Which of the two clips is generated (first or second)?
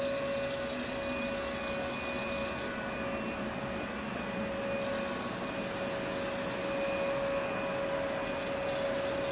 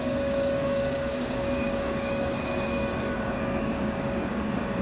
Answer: second